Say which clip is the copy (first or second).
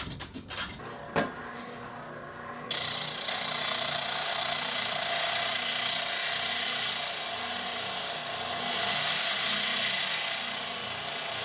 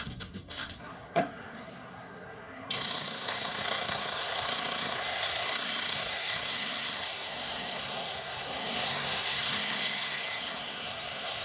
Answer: second